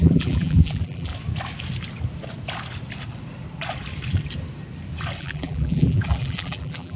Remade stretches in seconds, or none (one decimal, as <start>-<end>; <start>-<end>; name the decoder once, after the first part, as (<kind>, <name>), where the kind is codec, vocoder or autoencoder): 0.0-1.1 (vocoder, BigVGAN v2); 5.2-7.0